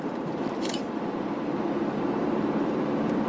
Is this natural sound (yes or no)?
no